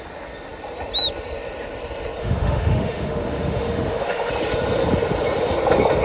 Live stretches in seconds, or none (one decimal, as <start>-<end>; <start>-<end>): 0.0-2.2; 4.3-6.0

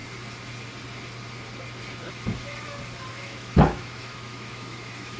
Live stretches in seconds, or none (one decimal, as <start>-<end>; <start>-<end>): 0.0-3.1

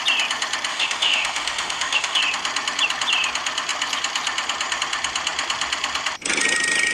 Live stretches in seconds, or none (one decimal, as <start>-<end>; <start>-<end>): 0.0-0.7; 2.2-6.9

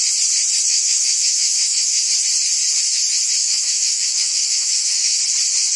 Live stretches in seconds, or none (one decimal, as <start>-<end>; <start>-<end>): 0.0-0.7; 2.1-3.4; 5.2-5.8

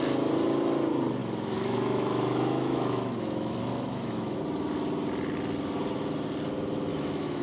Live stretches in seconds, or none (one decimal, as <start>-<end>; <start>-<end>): 0.0-1.2; 4.4-6.9

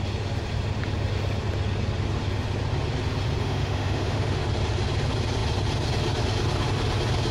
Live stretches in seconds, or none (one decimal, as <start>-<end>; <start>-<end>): 0.0-3.4; 4.4-7.3

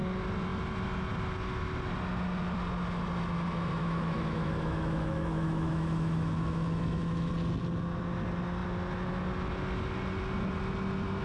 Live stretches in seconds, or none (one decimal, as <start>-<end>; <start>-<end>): 0.0-3.8; 7.3-11.2

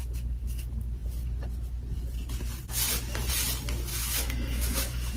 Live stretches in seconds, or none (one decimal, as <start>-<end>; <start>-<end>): 0.0-3.9